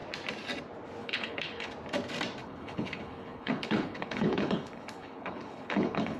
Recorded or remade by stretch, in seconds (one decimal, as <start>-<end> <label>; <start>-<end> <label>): 0.0-1.0 recorded; 1.0-1.7 remade; 1.7-2.4 recorded; 2.4-6.2 remade